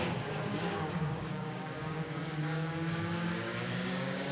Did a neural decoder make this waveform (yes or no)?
yes